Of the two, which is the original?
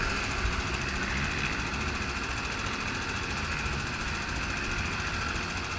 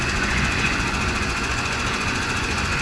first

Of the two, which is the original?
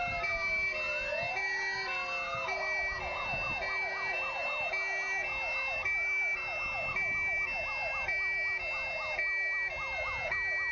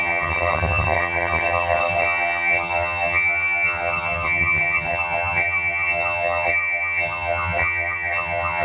first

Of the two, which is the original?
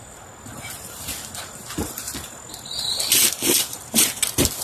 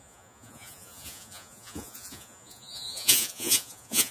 first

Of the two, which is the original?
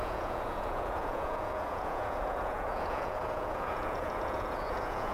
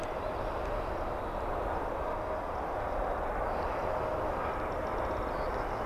second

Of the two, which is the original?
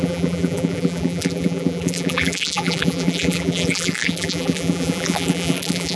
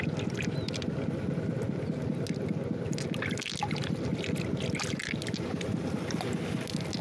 second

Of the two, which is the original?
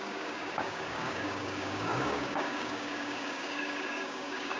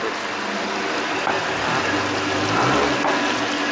second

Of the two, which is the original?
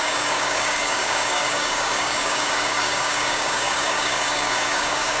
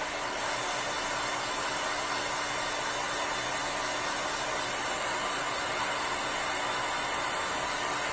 second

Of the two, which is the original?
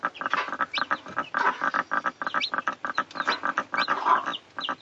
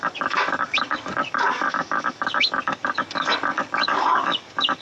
first